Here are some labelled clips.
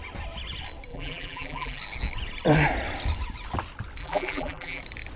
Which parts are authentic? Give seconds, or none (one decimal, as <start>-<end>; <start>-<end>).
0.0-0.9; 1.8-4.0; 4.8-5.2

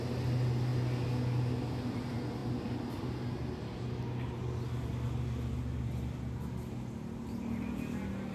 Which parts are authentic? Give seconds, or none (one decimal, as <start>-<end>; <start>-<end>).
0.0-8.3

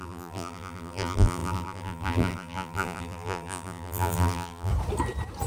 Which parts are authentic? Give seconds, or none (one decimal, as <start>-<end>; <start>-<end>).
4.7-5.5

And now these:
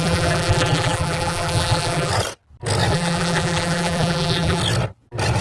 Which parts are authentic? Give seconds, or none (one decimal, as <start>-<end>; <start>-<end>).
2.1-2.9; 4.6-5.4

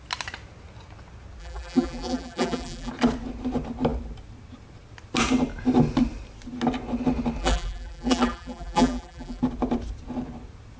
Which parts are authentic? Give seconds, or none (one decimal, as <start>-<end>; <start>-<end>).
0.0-1.4; 2.9-7.4; 9.4-10.8

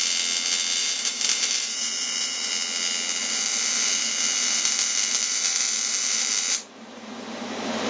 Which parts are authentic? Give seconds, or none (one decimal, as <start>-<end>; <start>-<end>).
0.0-0.8; 2.5-3.2; 7.4-7.9